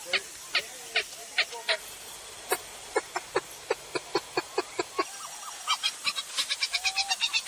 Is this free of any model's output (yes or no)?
yes